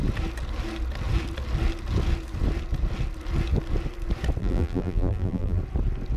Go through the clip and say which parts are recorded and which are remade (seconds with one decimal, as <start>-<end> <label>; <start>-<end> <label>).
0.0-4.4 recorded; 4.4-5.6 remade; 5.6-6.2 recorded